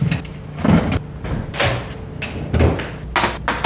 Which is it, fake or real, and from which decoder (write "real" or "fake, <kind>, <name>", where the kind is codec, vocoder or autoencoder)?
real